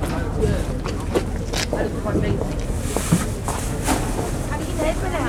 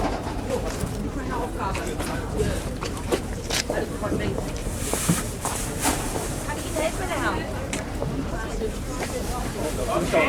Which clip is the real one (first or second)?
first